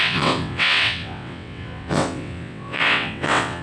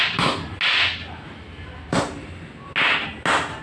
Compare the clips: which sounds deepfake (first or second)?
first